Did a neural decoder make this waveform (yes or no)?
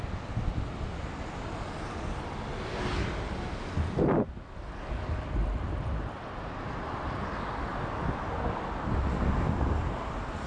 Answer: no